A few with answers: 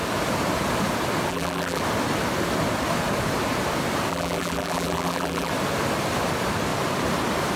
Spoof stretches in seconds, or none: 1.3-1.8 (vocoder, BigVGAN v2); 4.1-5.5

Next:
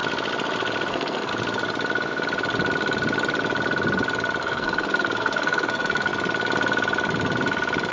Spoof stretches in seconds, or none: 0.9-1.3 (codec, SNAC); 4.4-6.1

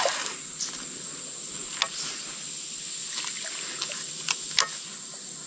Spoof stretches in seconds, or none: none